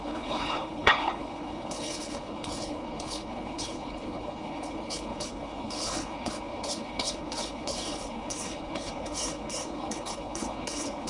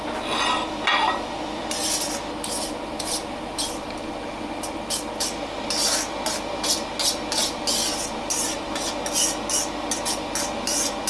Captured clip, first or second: second